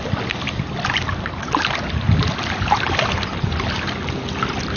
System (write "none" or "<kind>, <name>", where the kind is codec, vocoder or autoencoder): none